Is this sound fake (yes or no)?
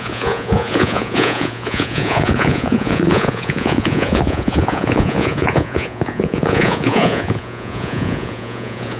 yes